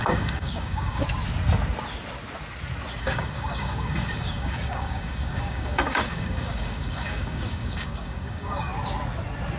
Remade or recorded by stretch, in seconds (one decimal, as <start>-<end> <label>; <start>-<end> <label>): 0.0-1.0 remade; 1.0-3.0 recorded; 3.0-8.7 remade; 8.7-9.6 recorded